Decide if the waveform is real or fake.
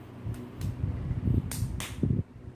real